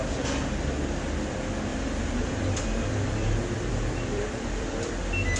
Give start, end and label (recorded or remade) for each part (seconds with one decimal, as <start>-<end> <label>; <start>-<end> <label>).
0.0-1.7 recorded; 1.7-4.9 remade; 4.9-5.4 recorded